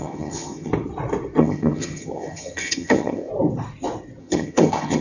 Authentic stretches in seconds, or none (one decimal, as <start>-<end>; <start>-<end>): 0.7-1.4; 3.3-4.2